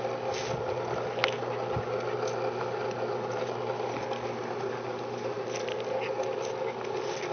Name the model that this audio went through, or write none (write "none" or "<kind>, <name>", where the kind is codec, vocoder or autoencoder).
none